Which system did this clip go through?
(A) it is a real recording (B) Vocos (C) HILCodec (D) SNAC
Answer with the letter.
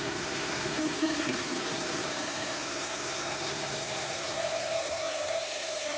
D